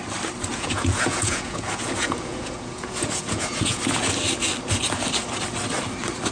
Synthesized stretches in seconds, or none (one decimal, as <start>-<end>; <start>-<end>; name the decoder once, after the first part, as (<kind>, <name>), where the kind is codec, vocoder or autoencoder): 0.5-3.8 (vocoder, Vocos)